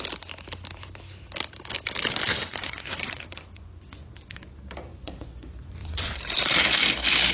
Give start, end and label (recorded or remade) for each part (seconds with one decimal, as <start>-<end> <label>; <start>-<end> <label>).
0.0-2.3 recorded; 2.3-4.5 remade; 4.5-4.9 recorded; 4.9-6.2 remade; 6.2-7.3 recorded